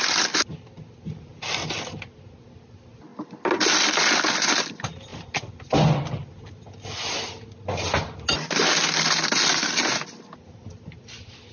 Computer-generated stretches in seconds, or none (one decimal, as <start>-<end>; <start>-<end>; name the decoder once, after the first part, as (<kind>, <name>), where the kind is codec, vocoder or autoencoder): none